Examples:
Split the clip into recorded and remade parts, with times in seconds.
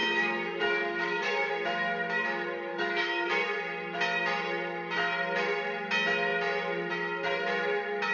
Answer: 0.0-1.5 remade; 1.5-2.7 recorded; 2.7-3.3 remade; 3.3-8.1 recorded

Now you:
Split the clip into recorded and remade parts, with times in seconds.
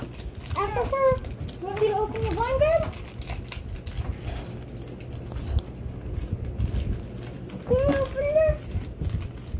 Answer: 0.0-9.6 recorded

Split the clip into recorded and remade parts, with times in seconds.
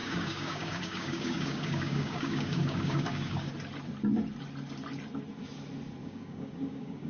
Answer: 0.0-3.5 remade; 3.5-6.0 recorded; 6.0-7.1 remade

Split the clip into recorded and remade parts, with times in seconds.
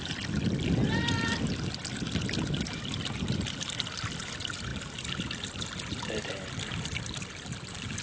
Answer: 0.0-8.0 recorded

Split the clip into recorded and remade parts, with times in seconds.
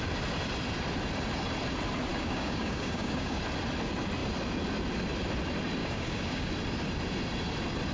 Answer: 0.0-2.1 recorded; 2.1-3.4 remade; 3.4-5.8 recorded; 5.8-6.5 remade; 6.5-7.9 recorded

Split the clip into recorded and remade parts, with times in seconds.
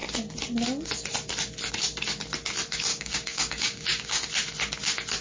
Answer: 0.0-2.9 recorded; 2.9-4.3 remade; 4.3-5.2 recorded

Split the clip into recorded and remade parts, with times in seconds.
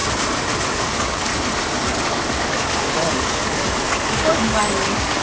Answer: 0.0-0.7 recorded; 0.7-1.3 remade; 1.3-2.1 recorded; 2.1-5.2 remade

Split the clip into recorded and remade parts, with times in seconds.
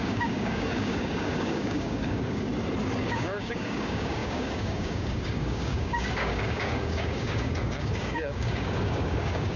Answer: 0.0-2.5 remade; 2.5-3.0 recorded; 3.0-9.6 remade